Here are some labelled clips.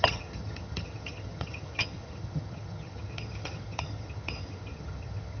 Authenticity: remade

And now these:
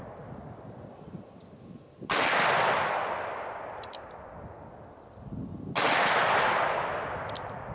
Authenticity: recorded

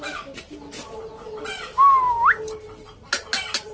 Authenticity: recorded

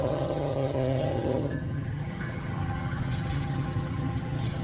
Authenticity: remade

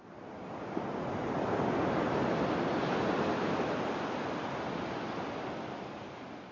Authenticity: recorded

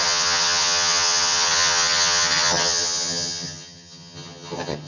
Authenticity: remade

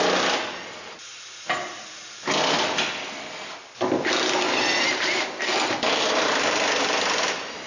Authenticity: recorded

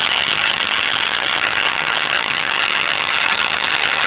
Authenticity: remade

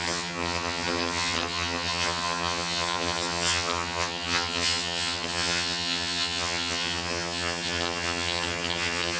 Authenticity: remade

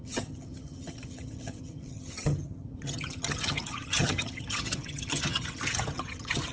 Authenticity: remade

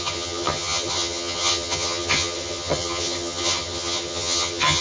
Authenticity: remade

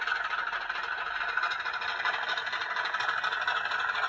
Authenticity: recorded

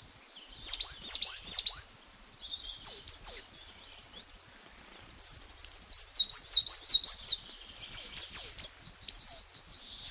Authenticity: recorded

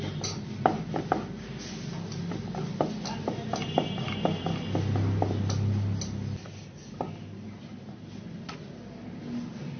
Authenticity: recorded